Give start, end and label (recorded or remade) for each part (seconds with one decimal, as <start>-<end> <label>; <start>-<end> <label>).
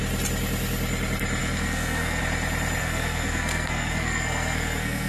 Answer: 0.0-1.4 recorded; 1.4-2.2 remade; 2.2-2.8 recorded; 2.8-5.1 remade